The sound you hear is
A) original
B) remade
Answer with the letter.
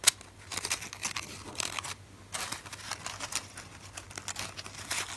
A